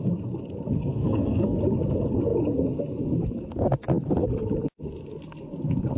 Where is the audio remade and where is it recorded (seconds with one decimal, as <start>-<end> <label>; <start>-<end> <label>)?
0.0-0.8 recorded; 0.8-1.6 remade; 1.6-6.0 recorded